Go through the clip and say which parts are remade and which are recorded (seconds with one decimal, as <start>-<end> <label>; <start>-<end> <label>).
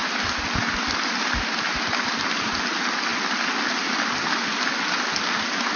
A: 0.0-5.8 recorded